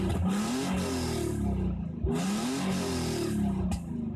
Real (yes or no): yes